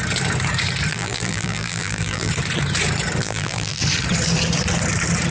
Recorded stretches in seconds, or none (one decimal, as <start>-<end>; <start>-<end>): 0.0-0.9; 2.3-3.2; 3.8-5.3

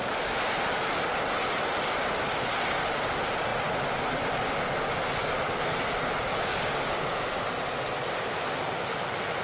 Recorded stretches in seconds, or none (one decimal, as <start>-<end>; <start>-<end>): 0.8-9.4

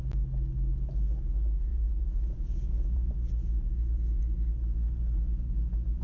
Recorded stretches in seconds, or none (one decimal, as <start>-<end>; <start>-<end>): 0.0-1.7; 3.1-6.0

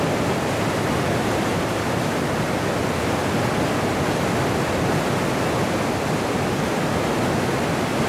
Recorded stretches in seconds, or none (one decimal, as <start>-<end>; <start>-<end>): 0.0-8.1

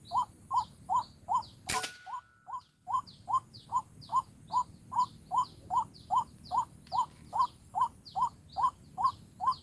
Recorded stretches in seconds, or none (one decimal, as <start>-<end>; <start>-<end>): 0.0-9.6

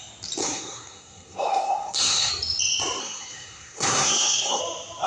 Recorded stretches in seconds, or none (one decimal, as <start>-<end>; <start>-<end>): 0.0-0.4; 2.3-3.0; 4.6-5.1